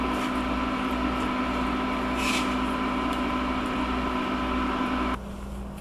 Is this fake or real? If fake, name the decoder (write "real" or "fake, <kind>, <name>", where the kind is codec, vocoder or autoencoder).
real